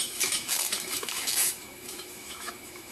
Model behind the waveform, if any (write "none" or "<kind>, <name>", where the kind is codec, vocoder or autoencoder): autoencoder, DAC-VAE